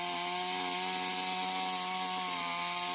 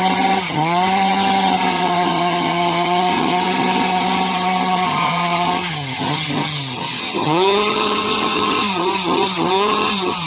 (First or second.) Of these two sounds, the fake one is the second